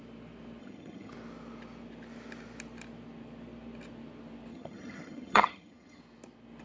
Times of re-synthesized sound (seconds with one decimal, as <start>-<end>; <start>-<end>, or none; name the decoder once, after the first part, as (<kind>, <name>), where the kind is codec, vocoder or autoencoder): 0.6-1.1 (vocoder, HiFi-GAN); 4.5-6.0